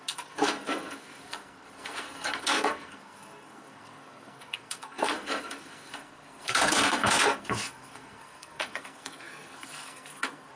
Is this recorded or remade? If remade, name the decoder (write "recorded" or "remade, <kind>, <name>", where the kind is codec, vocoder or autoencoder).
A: remade, codec, SNAC